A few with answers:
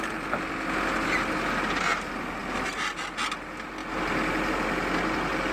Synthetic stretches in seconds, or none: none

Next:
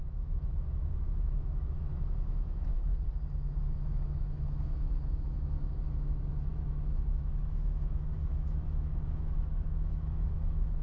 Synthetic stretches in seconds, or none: 0.0-2.9 (autoencoder, DAC-VAE); 3.7-10.8

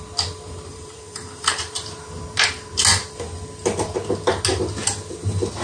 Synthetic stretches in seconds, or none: 0.7-1.7 (vocoder, BigVGAN v2)

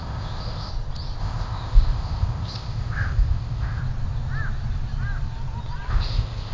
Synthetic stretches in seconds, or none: 0.0-0.7 (codec, ZipCodec); 1.2-3.8; 5.9-6.5

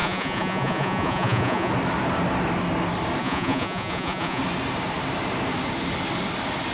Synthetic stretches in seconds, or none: 0.0-1.7 (vocoder, Vocos); 3.2-4.4

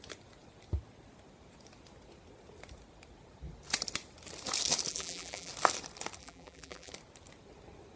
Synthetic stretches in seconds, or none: 4.9-5.5 (vocoder, BigVGAN v2); 6.2-6.9

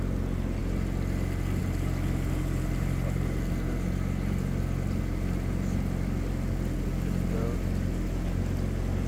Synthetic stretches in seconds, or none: none